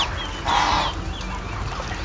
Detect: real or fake real